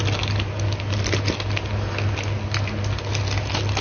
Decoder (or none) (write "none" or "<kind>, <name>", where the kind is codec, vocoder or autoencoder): none